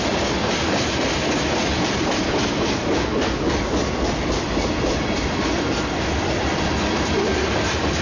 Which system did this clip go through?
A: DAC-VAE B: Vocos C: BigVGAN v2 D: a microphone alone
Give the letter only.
C